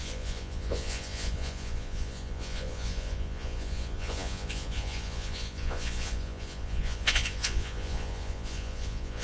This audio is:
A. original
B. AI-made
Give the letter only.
B